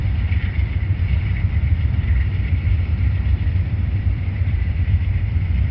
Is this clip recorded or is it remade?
remade